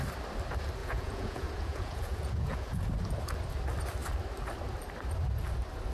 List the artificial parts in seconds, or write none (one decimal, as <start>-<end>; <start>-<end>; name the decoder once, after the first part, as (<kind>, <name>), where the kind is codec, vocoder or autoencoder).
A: 0.8-2.8 (vocoder, Vocos)